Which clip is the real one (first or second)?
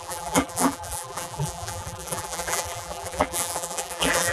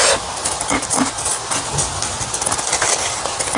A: second